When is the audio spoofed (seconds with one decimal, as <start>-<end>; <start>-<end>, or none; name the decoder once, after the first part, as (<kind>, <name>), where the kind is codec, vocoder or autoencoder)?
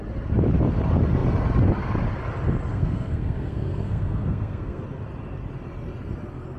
2.7-4.8 (codec, SNAC)